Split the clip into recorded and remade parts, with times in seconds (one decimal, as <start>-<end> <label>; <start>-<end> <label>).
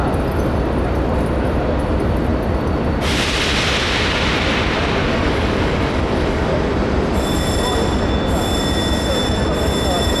0.0-5.1 recorded; 5.1-6.5 remade; 6.5-10.2 recorded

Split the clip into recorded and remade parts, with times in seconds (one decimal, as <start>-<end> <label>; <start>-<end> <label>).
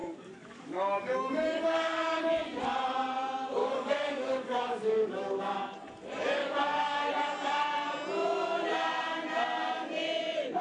0.0-2.2 remade; 2.2-3.6 recorded; 3.6-5.4 remade; 5.4-6.4 recorded; 6.4-7.1 remade; 7.1-10.6 recorded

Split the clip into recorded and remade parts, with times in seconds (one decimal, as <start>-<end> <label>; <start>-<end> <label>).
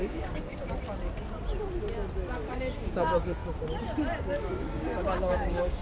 0.0-0.6 remade; 0.6-2.5 recorded; 2.5-3.4 remade; 3.4-4.2 recorded; 4.2-5.8 remade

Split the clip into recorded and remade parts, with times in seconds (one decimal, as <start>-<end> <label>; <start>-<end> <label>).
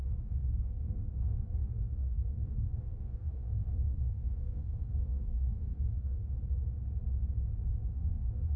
0.0-6.2 remade; 6.2-7.9 recorded; 7.9-8.6 remade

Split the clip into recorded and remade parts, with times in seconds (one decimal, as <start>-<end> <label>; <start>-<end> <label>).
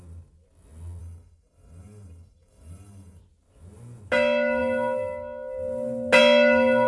0.0-1.0 recorded; 1.0-3.2 remade; 3.2-6.9 recorded